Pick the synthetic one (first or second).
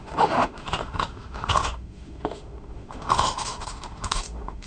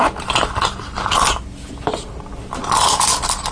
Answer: first